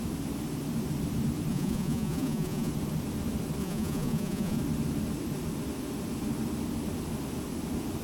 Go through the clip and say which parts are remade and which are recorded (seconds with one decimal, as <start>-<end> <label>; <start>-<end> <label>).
0.0-1.5 recorded; 1.5-2.7 remade; 2.7-3.6 recorded; 3.6-4.6 remade; 4.6-8.0 recorded